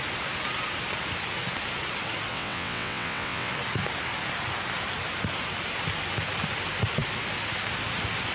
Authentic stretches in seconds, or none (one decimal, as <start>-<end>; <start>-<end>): 0.0-2.3; 3.5-8.3